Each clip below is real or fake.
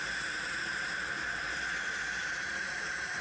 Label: real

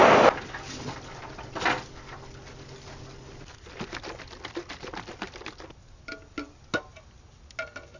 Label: real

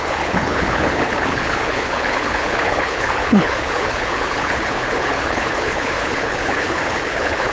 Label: fake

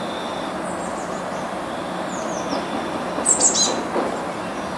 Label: real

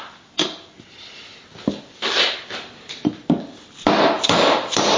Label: real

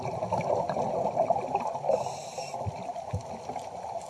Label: real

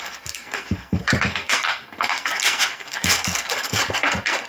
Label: fake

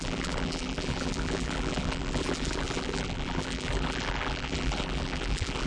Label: fake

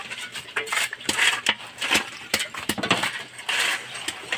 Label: real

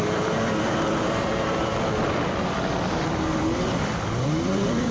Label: fake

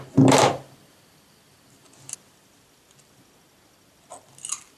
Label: real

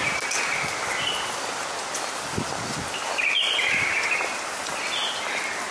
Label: real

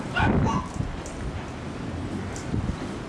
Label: real